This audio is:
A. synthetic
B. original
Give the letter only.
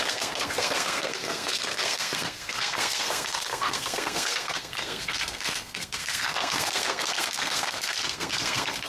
A